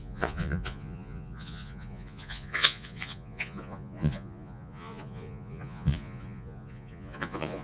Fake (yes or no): yes